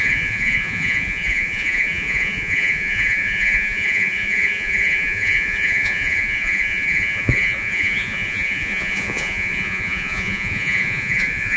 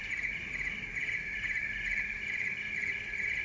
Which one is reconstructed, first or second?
first